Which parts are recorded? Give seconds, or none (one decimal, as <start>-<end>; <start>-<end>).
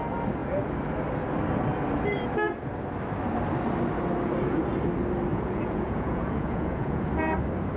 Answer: 0.0-5.3; 7.1-7.8